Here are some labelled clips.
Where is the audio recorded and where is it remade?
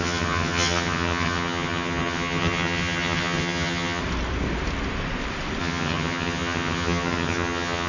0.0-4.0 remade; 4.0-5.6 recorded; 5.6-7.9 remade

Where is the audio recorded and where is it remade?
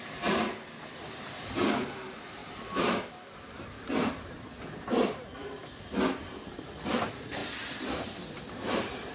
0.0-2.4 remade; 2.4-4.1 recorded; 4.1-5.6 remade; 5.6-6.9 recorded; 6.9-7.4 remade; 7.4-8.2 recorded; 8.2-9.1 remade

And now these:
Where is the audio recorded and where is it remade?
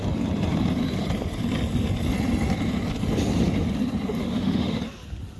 0.0-4.2 recorded; 4.2-4.8 remade; 4.8-5.4 recorded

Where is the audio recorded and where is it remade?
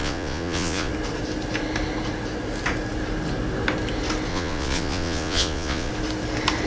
0.0-0.9 remade; 0.9-4.3 recorded; 4.3-5.9 remade; 5.9-6.7 recorded